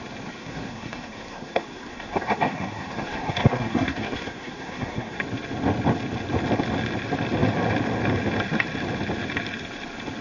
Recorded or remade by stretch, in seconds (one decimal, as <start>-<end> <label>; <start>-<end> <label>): 0.0-0.4 recorded; 0.4-5.2 remade; 5.2-10.2 recorded